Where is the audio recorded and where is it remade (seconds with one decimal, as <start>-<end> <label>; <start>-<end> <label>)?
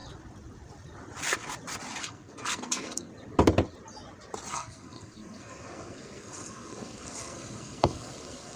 0.0-2.0 recorded; 2.0-3.1 remade; 3.1-4.5 recorded; 4.5-8.6 remade